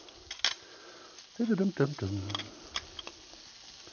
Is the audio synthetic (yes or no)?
no